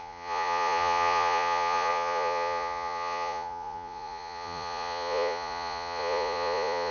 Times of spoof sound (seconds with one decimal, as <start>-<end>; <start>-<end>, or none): 0.0-6.9